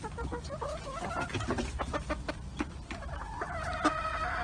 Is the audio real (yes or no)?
no